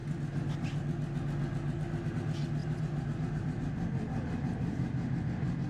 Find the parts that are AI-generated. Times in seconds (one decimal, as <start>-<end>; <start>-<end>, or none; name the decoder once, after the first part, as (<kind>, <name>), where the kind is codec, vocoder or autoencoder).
2.6-5.7 (vocoder, BigVGAN v2)